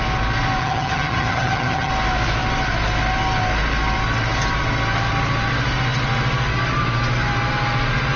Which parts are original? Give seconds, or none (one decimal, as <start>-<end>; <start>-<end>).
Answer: 0.0-0.6; 1.9-8.2